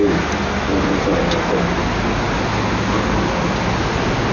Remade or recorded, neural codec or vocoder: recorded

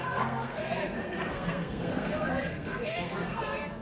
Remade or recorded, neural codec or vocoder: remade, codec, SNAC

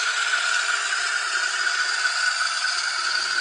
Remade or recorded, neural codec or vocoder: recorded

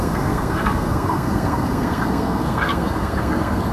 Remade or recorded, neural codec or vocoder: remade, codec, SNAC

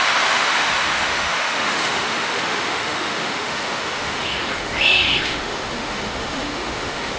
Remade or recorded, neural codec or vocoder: remade, autoencoder, DAC-VAE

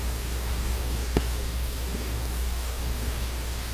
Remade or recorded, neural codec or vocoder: remade, codec, DAC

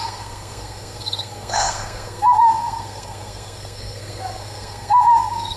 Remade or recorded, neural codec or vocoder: remade, codec, SNAC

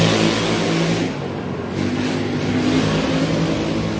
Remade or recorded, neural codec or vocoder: recorded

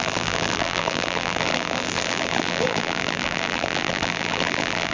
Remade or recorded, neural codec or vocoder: remade, vocoder, BigVGAN v2